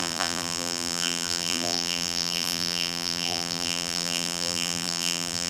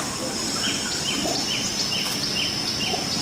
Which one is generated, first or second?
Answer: first